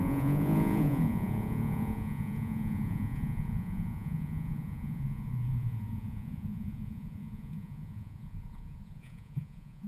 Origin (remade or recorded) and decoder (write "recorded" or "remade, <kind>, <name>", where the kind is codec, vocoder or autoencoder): remade, vocoder, Vocos